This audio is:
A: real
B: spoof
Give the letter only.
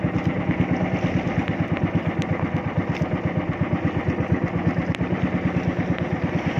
A